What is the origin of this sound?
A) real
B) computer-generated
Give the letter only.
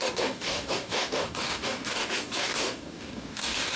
B